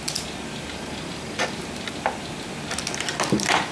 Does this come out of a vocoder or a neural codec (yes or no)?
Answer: no